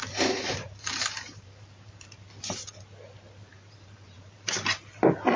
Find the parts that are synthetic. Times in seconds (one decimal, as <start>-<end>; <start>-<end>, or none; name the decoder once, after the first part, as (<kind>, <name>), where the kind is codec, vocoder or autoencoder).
0.0-2.3 (vocoder, BigVGAN v2); 3.5-5.0